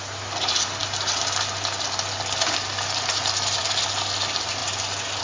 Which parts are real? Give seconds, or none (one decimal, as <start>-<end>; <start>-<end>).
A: 0.0-5.2